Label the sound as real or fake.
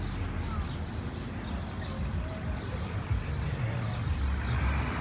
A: real